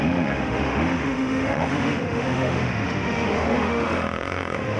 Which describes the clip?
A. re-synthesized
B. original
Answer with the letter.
A